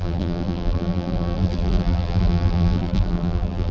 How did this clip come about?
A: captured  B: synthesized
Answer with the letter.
B